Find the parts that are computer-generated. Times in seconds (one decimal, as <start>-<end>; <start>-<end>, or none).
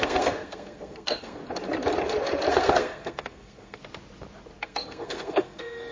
0.0-1.4; 2.5-3.8; 4.6-5.9